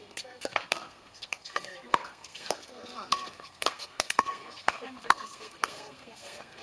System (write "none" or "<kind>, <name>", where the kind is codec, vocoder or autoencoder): codec, SNAC